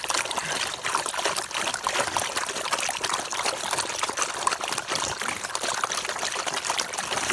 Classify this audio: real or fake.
fake